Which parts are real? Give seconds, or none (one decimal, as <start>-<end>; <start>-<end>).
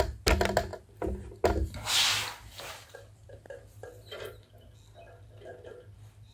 0.0-6.3